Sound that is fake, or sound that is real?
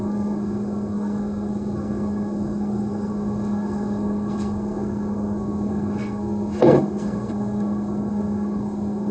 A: fake